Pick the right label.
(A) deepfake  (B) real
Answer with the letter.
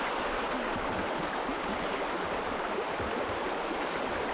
B